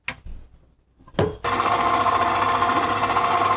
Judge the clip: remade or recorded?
recorded